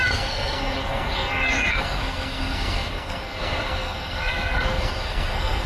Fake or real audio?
fake